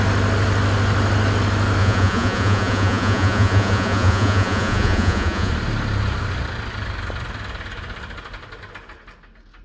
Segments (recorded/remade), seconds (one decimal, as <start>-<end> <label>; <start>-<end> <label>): 0.0-1.8 recorded; 1.8-5.5 remade; 5.5-9.6 recorded